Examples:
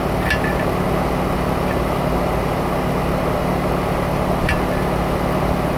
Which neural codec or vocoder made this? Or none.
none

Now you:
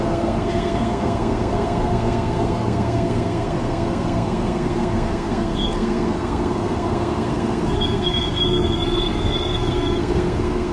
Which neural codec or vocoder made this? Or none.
codec, SNAC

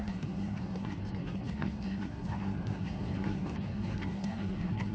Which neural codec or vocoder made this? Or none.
codec, SNAC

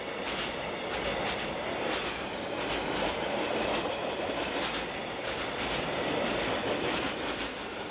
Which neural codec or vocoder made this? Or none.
none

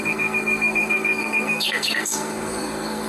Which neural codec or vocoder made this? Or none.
codec, SNAC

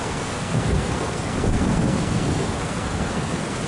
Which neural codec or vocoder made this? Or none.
codec, SNAC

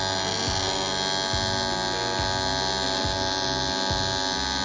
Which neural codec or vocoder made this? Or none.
none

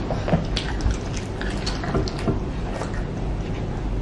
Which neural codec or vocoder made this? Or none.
none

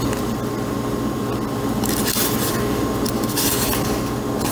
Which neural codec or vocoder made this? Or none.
none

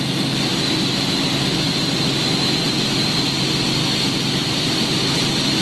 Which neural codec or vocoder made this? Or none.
none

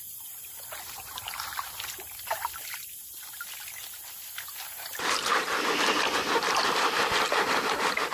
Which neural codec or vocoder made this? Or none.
none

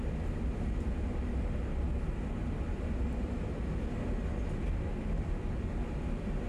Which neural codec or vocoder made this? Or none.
none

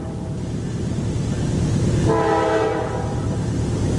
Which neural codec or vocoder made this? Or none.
none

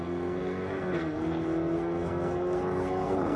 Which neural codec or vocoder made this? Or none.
codec, SNAC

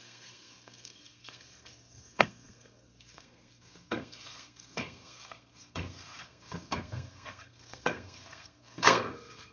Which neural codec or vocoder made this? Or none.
codec, SNAC